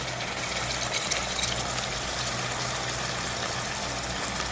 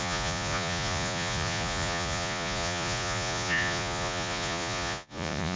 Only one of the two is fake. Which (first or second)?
second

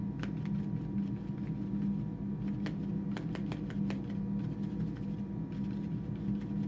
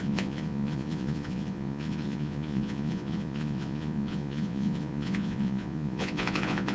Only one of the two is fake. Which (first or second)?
second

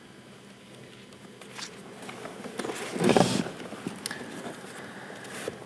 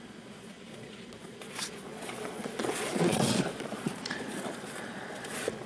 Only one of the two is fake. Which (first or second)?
second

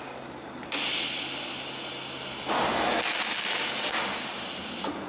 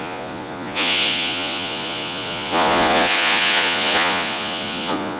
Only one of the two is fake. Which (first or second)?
second